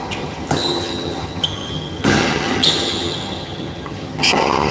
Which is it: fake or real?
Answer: fake